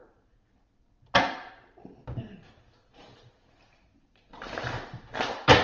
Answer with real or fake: real